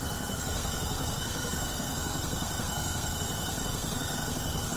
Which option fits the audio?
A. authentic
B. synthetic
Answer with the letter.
B